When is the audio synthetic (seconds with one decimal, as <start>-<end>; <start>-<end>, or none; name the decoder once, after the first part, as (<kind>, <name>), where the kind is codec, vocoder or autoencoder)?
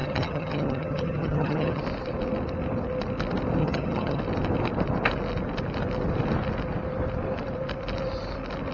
0.0-1.8 (vocoder, HiFi-GAN); 3.6-4.2